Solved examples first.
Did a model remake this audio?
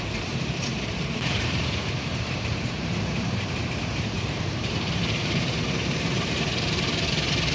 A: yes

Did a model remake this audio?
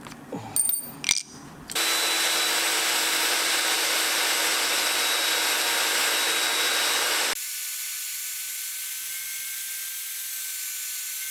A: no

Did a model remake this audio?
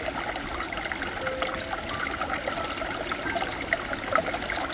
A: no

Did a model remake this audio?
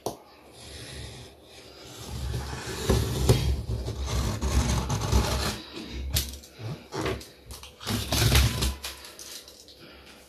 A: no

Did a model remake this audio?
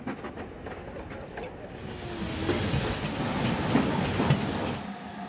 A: no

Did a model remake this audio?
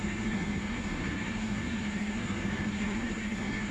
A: yes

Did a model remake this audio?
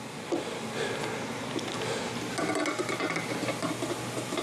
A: no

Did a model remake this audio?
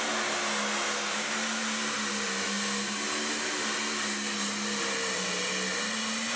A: no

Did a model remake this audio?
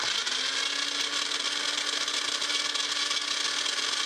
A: no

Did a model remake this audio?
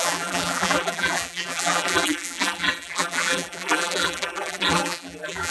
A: yes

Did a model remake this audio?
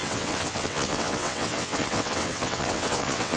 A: yes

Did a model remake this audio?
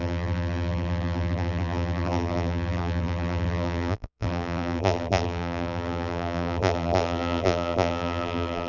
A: yes